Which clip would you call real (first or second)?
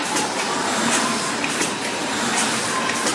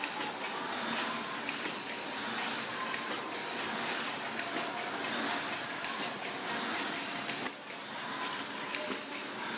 second